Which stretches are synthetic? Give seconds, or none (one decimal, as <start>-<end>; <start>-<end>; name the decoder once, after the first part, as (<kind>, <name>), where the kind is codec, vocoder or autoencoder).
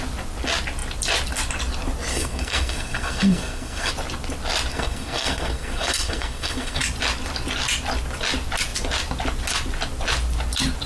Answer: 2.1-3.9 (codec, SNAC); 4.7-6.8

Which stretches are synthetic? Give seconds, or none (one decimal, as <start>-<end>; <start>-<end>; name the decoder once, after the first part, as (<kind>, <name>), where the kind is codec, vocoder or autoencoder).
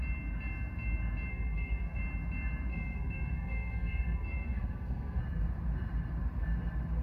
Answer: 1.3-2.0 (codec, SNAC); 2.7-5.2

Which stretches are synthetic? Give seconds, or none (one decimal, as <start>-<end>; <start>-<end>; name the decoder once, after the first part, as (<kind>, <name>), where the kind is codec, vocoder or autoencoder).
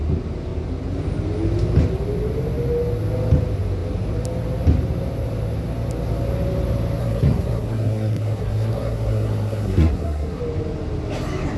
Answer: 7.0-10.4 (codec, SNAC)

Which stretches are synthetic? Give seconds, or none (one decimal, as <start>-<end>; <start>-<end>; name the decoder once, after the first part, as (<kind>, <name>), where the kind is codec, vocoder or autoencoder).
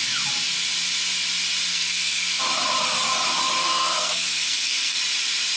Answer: 1.7-2.4 (codec, SNAC); 3.6-5.0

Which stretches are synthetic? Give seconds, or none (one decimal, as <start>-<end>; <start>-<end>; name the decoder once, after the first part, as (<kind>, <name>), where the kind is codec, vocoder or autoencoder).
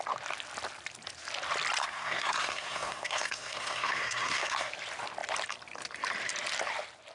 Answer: 1.8-4.7 (codec, SNAC)